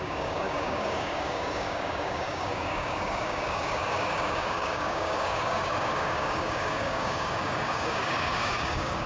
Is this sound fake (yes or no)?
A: yes